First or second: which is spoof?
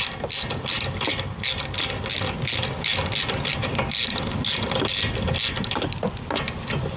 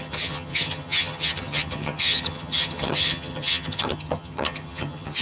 second